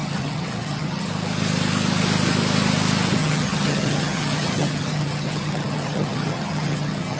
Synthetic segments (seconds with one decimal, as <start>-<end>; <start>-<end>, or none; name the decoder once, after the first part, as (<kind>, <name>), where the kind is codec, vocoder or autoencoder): 0.0-1.1 (vocoder, HiFi-GAN); 3.2-7.2